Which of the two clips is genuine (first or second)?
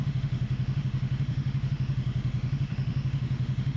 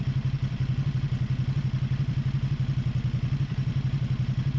second